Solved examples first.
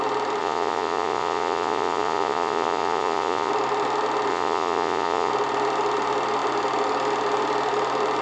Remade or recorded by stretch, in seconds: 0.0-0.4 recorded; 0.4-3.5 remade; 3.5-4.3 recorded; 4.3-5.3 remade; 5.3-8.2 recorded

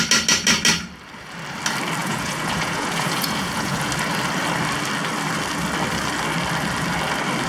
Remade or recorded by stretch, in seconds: 0.0-2.0 recorded; 2.0-3.9 remade; 3.9-7.5 recorded

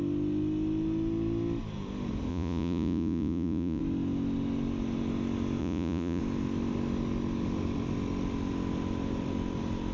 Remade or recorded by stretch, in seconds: 0.0-2.3 recorded; 2.3-3.8 remade; 3.8-5.6 recorded; 5.6-6.2 remade; 6.2-9.9 recorded

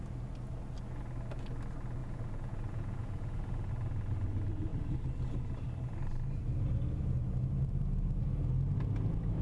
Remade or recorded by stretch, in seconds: 0.0-2.0 recorded; 2.0-3.7 remade; 3.7-9.4 recorded